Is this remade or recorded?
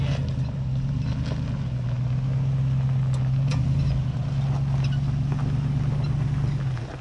recorded